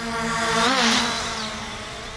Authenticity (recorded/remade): recorded